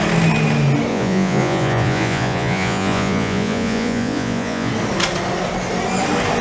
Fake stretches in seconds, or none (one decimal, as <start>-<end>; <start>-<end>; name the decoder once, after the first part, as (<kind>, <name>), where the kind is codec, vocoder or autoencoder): 0.9-4.7 (vocoder, Vocos)